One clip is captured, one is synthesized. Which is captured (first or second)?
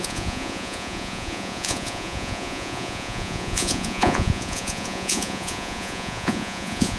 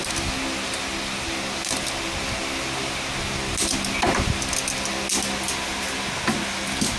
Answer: second